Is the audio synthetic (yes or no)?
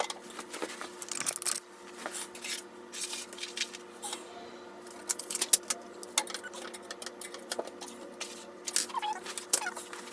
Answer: no